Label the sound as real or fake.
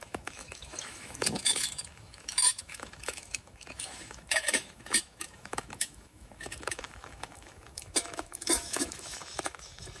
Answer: fake